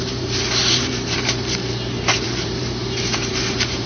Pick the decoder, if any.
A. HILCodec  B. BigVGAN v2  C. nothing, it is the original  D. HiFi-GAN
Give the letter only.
B